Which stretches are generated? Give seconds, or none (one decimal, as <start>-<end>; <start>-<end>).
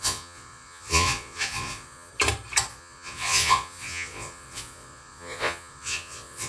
0.0-2.1; 2.7-6.5